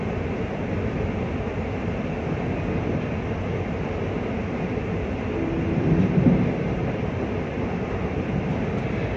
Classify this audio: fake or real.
real